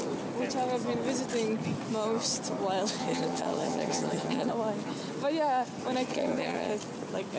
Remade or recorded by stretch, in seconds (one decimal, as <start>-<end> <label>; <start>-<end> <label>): 0.0-3.0 recorded; 3.0-4.5 remade; 4.5-6.1 recorded; 6.1-6.7 remade; 6.7-7.4 recorded